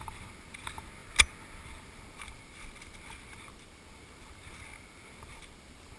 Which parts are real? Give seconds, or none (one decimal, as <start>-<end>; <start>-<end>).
0.0-6.0